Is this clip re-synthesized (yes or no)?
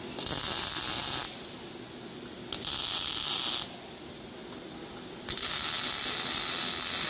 no